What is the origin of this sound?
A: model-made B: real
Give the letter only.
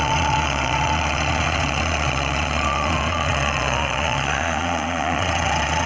A